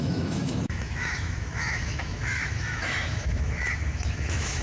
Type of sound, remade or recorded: remade